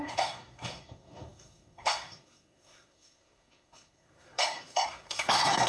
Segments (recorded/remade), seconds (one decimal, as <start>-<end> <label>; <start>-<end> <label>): 0.0-5.7 remade